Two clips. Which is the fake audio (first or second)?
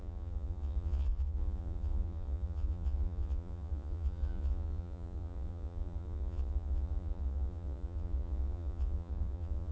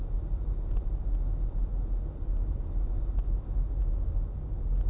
first